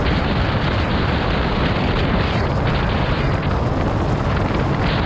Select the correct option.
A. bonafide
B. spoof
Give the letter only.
A